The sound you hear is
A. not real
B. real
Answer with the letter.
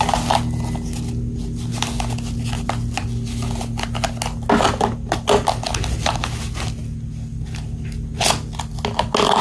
B